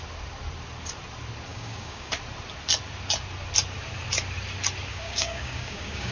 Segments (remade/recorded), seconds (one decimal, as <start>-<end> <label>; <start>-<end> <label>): 0.0-1.5 recorded; 1.5-2.1 remade; 2.1-4.9 recorded; 4.9-6.1 remade